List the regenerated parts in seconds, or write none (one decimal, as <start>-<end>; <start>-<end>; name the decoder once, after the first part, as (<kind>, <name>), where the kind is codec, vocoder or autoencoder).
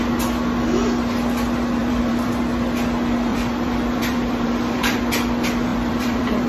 1.8-2.3 (vocoder, BigVGAN v2); 3.3-5.0; 5.7-6.5